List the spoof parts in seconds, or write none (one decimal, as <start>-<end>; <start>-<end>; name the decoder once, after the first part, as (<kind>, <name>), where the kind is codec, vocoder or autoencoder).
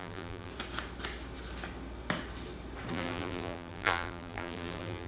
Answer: 0.0-0.5 (vocoder, BigVGAN v2); 2.9-5.1